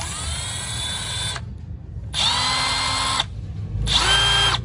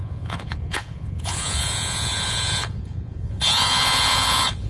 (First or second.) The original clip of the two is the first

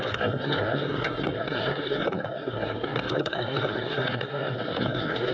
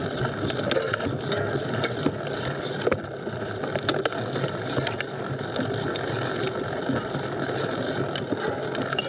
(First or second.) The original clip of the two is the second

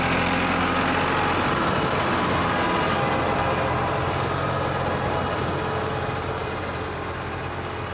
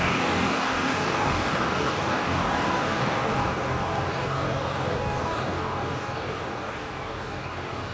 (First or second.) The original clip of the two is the first